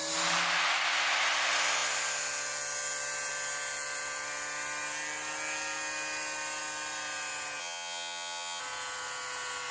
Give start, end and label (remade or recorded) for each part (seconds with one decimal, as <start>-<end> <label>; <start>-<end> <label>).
0.0-7.6 recorded; 7.6-8.6 remade; 8.6-9.7 recorded